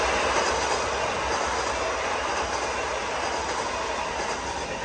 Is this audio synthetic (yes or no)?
no